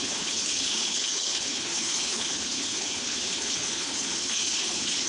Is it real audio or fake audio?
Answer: fake